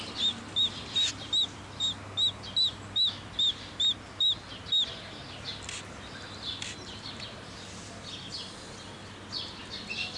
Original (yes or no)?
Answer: yes